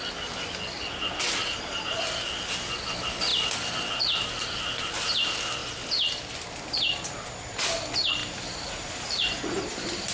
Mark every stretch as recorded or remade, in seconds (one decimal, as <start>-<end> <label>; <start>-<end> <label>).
0.0-1.4 recorded; 1.4-2.0 remade; 2.0-8.2 recorded; 8.2-9.6 remade; 9.6-10.1 recorded